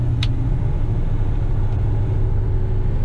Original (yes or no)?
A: yes